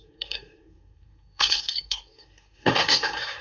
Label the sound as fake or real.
fake